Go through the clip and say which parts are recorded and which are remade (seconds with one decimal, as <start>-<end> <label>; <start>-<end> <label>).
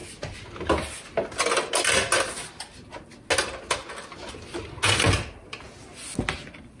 0.0-6.8 recorded